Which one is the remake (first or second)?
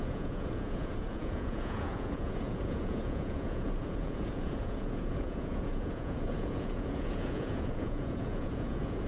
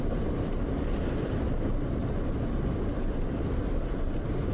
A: first